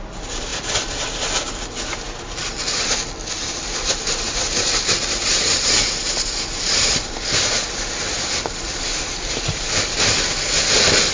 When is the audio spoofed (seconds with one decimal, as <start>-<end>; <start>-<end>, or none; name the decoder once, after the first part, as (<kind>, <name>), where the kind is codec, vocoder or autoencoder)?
0.0-0.5 (vocoder, BigVGAN v2); 3.5-11.1